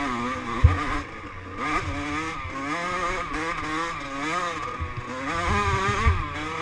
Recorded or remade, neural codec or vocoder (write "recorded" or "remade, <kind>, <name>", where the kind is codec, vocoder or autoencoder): recorded